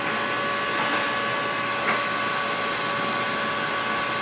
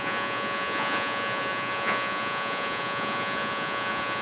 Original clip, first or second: first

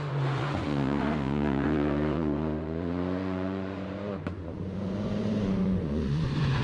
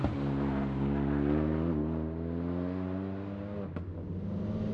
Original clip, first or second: second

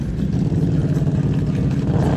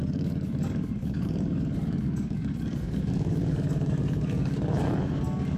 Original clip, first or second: first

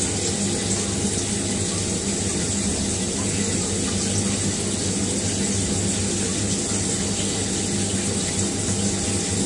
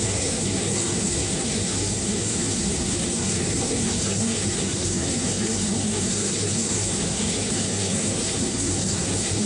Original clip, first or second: first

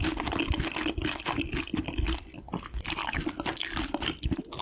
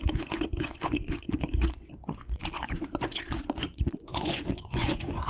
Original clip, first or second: first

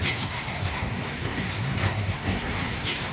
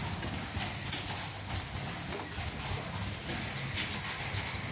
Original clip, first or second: second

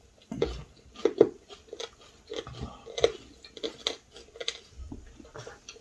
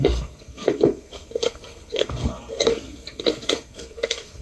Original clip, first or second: first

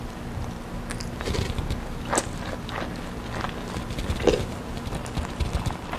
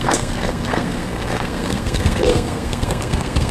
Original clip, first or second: first